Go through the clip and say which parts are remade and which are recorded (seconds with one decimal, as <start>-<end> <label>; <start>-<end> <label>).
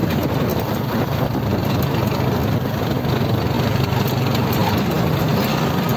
0.0-6.0 recorded